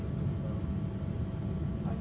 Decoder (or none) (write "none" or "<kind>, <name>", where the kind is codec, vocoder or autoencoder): none